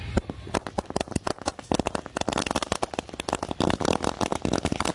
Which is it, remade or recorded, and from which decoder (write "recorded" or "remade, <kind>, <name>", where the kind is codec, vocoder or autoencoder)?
recorded